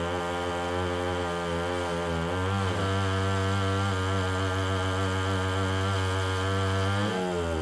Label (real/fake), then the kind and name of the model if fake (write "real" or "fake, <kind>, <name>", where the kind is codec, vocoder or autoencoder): real